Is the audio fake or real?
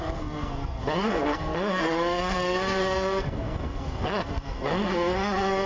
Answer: fake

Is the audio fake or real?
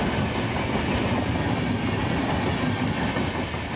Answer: real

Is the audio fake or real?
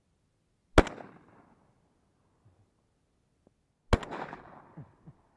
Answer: real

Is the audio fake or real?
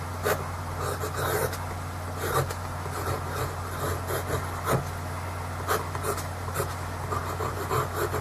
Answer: real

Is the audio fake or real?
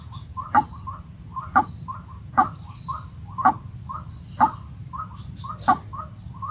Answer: real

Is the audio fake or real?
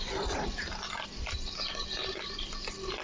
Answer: real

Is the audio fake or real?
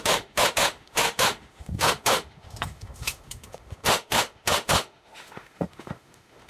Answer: fake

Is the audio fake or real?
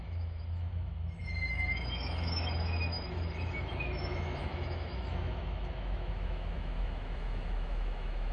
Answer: fake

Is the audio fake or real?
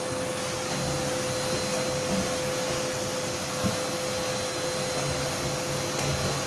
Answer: real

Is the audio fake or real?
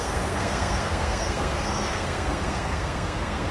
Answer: fake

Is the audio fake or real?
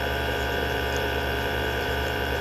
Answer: fake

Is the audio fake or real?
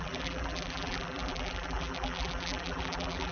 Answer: fake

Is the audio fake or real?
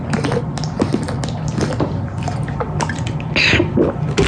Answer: real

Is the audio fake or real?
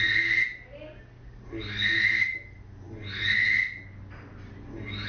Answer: real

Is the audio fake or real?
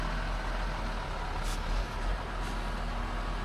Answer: real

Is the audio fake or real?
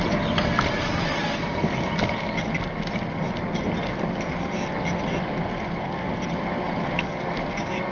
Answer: real